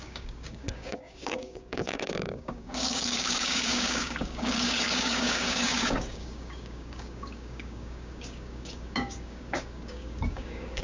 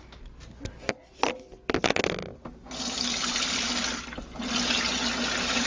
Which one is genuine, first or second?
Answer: second